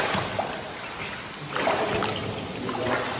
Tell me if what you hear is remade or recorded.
recorded